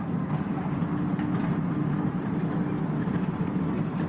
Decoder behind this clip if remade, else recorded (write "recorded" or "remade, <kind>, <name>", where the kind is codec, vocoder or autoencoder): recorded